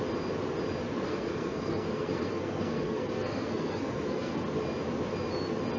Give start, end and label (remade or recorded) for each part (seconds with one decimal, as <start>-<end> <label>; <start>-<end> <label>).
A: 0.0-1.1 recorded; 1.1-4.4 remade; 4.4-5.8 recorded